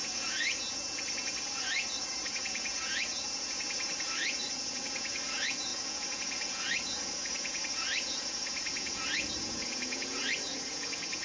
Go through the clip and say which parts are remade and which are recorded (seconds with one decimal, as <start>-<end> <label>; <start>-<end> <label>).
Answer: 0.0-11.2 remade